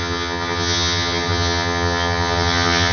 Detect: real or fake fake